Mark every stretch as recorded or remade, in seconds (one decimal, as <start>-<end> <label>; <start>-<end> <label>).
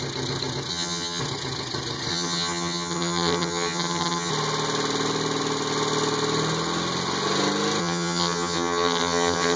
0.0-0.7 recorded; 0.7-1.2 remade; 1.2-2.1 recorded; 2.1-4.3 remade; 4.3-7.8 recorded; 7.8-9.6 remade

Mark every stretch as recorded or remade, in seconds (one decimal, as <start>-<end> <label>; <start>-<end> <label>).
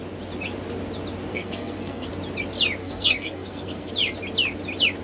0.0-1.3 recorded; 1.3-2.1 remade; 2.1-2.8 recorded; 2.8-3.9 remade; 3.9-5.0 recorded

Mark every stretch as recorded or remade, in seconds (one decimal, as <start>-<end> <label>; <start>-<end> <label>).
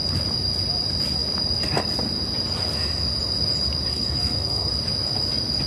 0.0-3.9 recorded; 3.9-4.7 remade; 4.7-5.7 recorded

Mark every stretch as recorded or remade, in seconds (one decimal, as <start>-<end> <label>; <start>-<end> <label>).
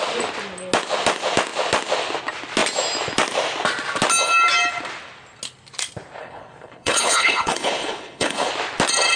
0.0-6.2 recorded; 6.2-8.5 remade; 8.5-9.2 recorded